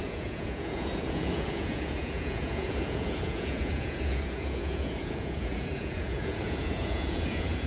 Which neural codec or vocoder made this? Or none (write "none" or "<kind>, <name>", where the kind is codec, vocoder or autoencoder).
vocoder, Vocos